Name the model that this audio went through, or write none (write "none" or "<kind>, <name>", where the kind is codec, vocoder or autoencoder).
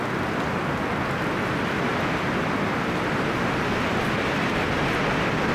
none